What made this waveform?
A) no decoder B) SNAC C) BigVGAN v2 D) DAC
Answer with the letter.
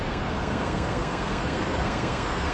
B